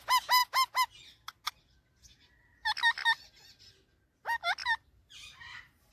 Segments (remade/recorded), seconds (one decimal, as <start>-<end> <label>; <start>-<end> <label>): 0.0-4.6 recorded; 4.6-5.9 remade

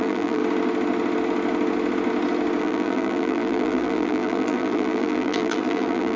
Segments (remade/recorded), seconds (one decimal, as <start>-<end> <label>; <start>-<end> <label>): 0.0-0.4 remade; 0.4-2.6 recorded; 2.6-6.2 remade

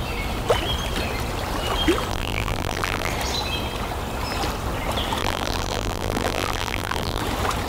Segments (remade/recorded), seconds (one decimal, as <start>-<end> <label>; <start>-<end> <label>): 0.0-2.1 recorded; 2.1-3.1 remade; 3.1-5.2 recorded; 5.2-7.2 remade; 7.2-7.7 recorded

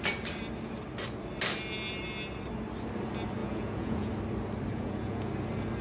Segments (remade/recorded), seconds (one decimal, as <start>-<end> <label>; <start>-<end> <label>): 0.0-3.4 recorded; 3.4-4.1 remade; 4.1-4.7 recorded; 4.7-5.3 remade; 5.3-5.8 recorded